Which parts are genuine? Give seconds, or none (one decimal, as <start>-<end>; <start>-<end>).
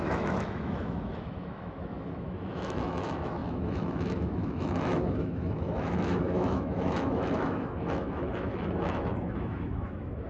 none